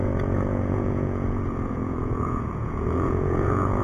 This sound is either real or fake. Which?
fake